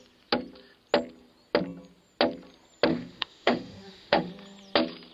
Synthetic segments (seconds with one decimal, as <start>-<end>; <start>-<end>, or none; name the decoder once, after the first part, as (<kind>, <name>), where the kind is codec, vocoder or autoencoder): 2.9-4.3 (autoencoder, DAC-VAE)